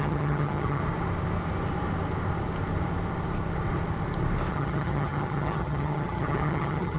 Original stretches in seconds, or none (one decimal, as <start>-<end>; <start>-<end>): 0.8-4.5

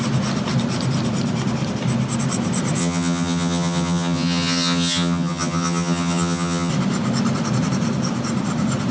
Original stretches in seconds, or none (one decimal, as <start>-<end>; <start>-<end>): 0.0-2.8; 6.7-8.9

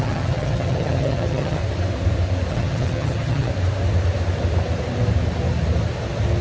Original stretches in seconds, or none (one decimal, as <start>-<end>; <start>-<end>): 1.6-2.5; 3.5-6.4

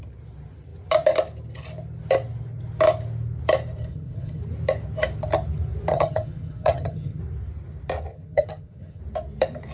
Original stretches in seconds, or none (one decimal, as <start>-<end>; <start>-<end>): 0.0-3.9; 4.4-5.9; 7.2-8.1; 9.0-9.7

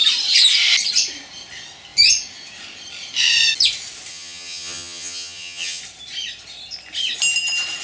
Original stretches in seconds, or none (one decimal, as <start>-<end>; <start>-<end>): 0.0-4.1; 5.8-7.8

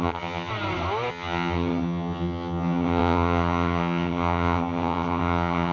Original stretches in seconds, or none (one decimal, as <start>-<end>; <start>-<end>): 0.5-1.1

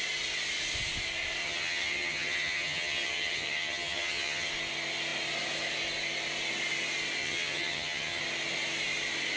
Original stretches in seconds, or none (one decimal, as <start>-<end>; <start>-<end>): 0.0-1.4; 4.5-7.2; 8.2-9.4

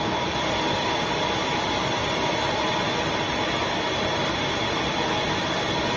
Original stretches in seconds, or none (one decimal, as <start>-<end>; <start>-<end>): 0.0-6.0